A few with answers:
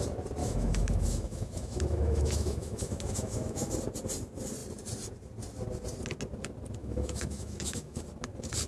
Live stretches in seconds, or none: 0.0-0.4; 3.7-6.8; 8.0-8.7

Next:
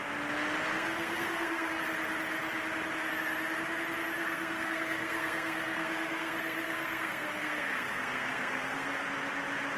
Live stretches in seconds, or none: 0.0-0.7; 1.8-4.2; 9.0-9.8

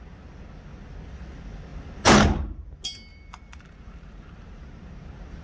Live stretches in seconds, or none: 0.0-3.1

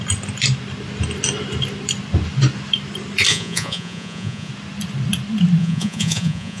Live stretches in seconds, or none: 0.0-3.3; 4.5-5.6